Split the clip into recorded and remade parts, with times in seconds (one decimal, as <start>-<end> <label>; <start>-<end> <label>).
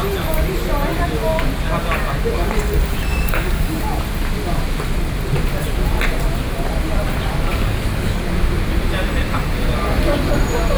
0.0-3.1 recorded; 3.1-3.8 remade; 3.8-7.5 recorded; 7.5-8.2 remade; 8.2-10.8 recorded